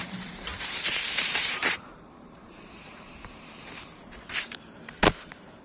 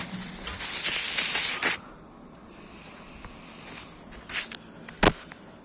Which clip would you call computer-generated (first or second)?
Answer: first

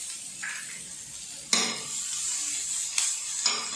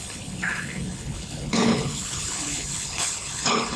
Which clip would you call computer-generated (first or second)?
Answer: second